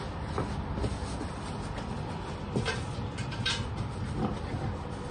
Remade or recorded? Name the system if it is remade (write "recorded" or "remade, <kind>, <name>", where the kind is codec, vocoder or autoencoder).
recorded